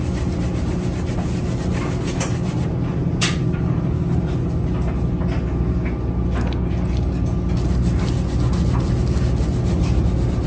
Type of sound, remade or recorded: recorded